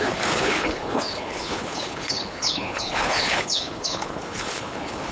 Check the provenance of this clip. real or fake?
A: fake